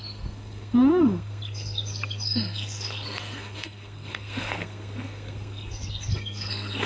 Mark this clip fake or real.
fake